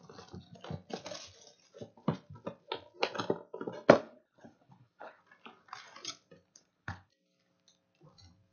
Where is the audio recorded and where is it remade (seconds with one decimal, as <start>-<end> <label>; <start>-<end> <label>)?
0.0-4.0 recorded; 4.0-5.2 remade; 5.2-6.5 recorded; 6.5-7.1 remade; 7.1-8.5 recorded